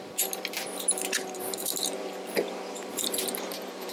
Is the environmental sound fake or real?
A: real